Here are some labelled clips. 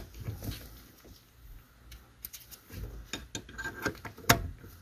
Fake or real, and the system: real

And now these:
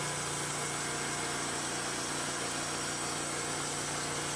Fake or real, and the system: real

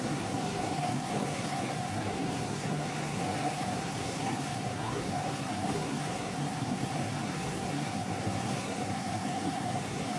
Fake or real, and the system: fake, codec, SNAC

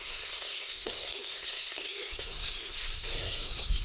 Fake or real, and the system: fake, codec, SNAC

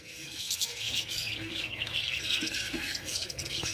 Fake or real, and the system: fake, codec, SNAC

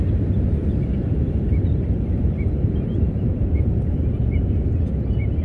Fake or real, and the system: real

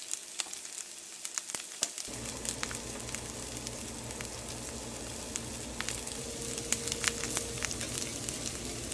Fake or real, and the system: real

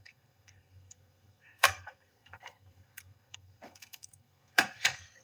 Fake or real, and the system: fake, codec, SNAC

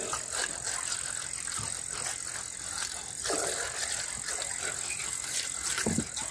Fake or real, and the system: real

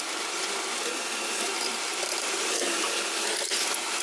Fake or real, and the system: real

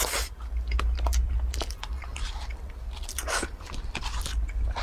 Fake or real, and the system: real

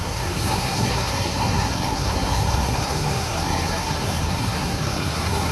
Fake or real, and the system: fake, codec, SNAC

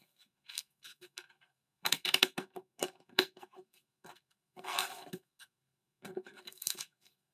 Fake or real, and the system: fake, codec, SNAC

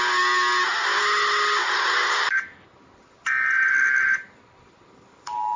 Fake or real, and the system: real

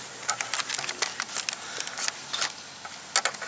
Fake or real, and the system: real